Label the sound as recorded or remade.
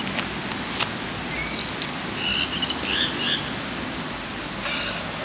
recorded